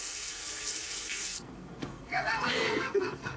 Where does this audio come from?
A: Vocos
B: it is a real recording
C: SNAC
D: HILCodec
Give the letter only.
C